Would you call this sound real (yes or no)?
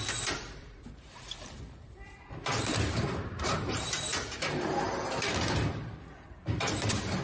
no